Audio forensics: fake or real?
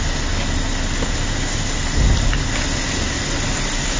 real